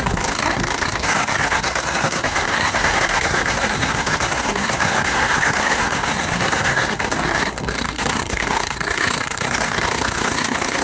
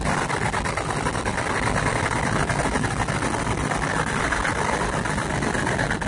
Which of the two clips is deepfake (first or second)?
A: first